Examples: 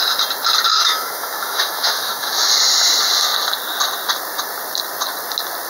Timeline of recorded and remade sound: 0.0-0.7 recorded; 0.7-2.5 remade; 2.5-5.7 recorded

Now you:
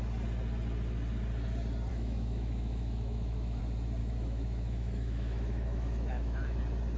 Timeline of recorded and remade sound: 0.0-1.9 recorded; 1.9-3.6 remade; 3.6-4.0 recorded; 4.0-6.6 remade; 6.6-7.0 recorded